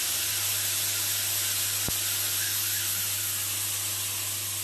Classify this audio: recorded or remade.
recorded